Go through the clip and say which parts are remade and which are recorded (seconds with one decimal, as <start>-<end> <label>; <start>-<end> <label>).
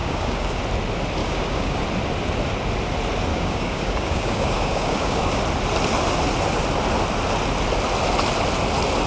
0.0-0.6 remade; 0.6-1.2 recorded; 1.2-1.8 remade; 1.8-3.3 recorded; 3.3-5.4 remade; 5.4-9.1 recorded